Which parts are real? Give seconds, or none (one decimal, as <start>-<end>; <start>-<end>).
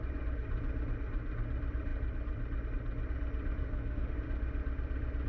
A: 0.0-3.6; 4.1-5.3